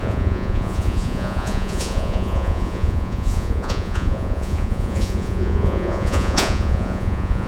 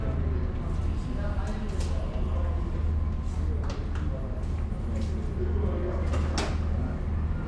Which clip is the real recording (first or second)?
second